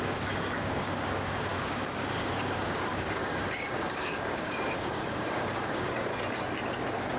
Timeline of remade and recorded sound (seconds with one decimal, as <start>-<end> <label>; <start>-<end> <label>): 0.0-6.1 remade; 6.1-7.2 recorded